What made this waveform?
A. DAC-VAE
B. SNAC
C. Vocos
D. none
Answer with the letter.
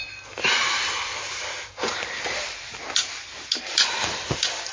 D